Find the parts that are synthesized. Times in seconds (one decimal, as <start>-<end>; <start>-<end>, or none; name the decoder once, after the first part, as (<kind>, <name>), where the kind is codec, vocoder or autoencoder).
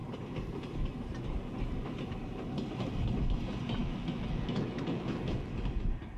3.8-5.5 (autoencoder, DAC-VAE)